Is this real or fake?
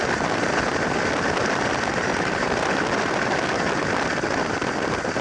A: real